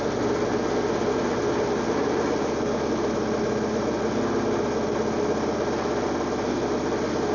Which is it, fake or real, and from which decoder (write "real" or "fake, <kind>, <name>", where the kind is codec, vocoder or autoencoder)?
real